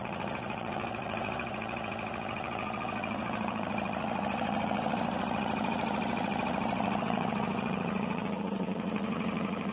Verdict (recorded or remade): remade